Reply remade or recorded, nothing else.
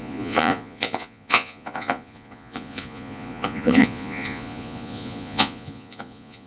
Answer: remade